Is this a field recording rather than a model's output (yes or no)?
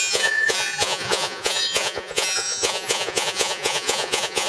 no